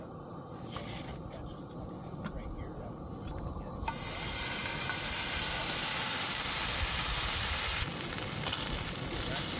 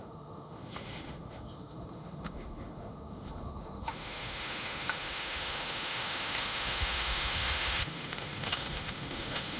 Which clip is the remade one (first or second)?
second